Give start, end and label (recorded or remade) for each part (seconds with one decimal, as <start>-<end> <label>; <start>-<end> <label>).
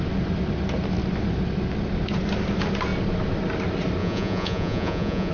0.0-4.0 recorded; 4.0-5.3 remade